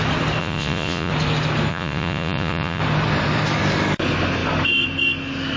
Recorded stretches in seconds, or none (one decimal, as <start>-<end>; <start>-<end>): 0.0-0.4; 1.1-1.7; 2.8-5.6

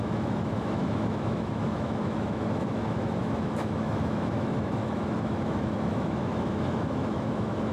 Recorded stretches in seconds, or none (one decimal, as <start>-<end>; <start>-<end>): none

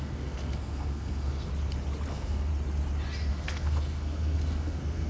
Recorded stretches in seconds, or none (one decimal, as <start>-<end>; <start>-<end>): 1.5-2.1; 2.5-3.3

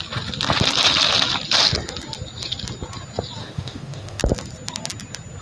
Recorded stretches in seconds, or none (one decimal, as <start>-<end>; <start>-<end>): 0.0-3.4; 4.2-5.4

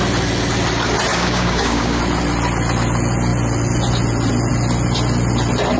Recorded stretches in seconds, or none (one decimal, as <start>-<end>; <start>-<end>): 0.0-1.1; 2.0-5.8

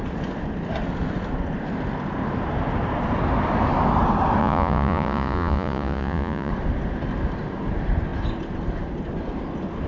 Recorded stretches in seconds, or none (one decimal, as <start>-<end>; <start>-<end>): 0.0-4.4; 6.5-9.9

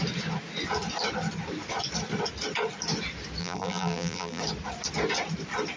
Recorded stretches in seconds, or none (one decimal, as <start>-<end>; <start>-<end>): 0.0-3.4; 4.4-5.8